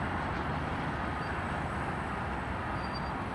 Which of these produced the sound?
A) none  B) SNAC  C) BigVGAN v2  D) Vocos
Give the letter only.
A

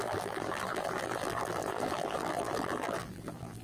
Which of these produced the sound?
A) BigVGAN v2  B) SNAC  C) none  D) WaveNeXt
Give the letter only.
A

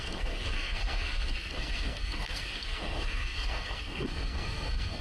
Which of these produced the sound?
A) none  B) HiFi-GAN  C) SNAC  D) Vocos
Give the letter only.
C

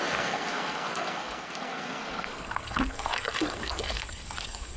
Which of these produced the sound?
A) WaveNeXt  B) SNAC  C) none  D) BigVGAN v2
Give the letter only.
B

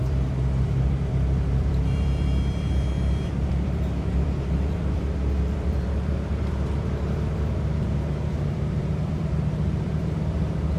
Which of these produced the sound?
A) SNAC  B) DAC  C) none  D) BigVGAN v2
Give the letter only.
D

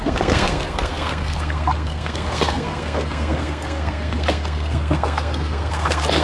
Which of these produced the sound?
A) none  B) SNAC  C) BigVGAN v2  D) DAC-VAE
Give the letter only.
B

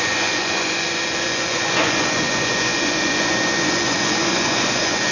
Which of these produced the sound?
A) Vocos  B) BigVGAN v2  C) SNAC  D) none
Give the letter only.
A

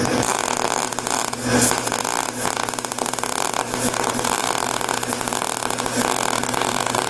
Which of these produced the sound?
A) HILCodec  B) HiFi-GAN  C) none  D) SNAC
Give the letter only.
C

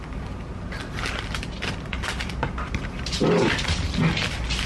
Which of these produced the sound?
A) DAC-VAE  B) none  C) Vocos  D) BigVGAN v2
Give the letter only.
B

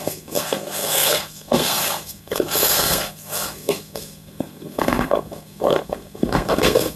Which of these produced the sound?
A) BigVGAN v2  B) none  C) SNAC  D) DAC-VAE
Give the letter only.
C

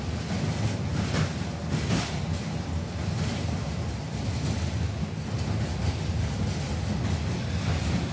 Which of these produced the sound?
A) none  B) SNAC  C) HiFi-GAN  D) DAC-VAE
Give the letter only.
A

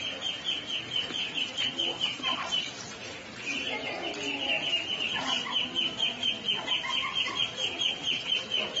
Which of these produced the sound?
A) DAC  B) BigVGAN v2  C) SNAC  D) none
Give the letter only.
D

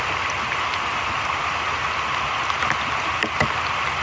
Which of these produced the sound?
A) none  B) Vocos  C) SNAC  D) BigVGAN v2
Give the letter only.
A